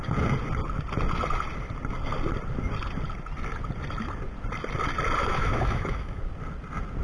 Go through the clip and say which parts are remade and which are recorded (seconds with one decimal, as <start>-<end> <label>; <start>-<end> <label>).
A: 0.0-5.2 recorded; 5.2-6.2 remade; 6.2-7.0 recorded